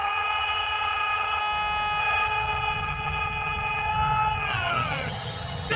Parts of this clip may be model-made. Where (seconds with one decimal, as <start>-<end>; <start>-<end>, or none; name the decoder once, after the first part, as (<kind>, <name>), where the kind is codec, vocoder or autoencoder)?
0.0-1.4 (vocoder, HiFi-GAN); 2.0-5.8